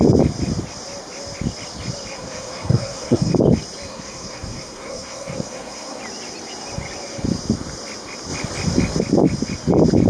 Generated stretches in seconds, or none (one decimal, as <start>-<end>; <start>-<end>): 2.1-3.3; 3.9-6.0